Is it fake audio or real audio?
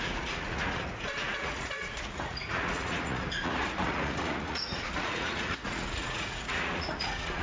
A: fake